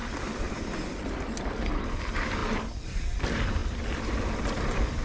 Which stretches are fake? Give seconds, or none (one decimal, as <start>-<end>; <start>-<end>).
0.0-2.4; 3.2-3.6; 4.4-5.0